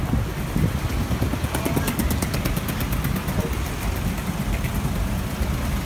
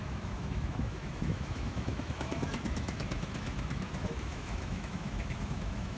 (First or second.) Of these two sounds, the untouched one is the first